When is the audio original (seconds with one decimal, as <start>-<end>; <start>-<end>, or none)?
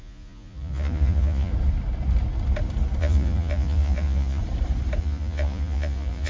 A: 1.5-3.0; 4.4-5.0